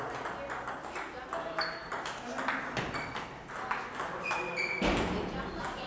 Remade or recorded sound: recorded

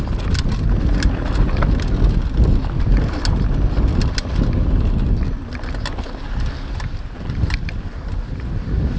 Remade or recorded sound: recorded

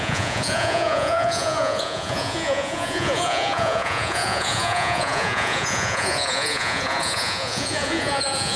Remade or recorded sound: remade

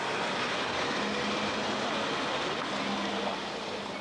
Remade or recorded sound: recorded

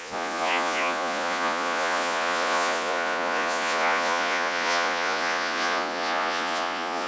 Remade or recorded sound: remade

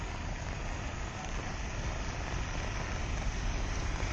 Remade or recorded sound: recorded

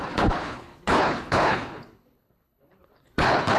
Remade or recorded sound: remade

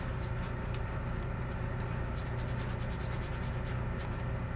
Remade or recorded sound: recorded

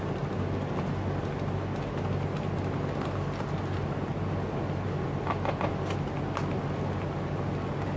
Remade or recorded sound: recorded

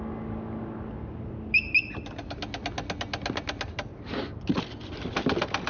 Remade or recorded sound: recorded